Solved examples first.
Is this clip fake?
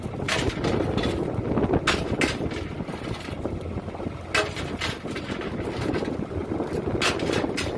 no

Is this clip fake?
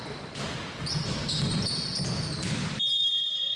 no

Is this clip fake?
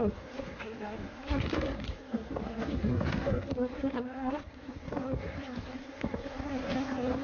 yes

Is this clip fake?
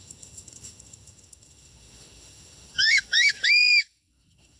yes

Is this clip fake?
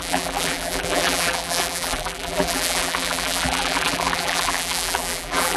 yes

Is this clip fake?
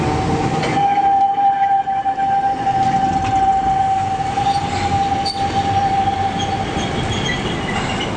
no